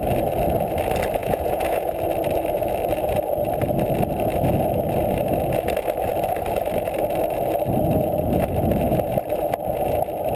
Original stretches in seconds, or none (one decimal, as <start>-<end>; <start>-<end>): 0.0-1.2; 1.9-10.4